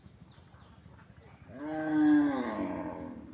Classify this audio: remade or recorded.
recorded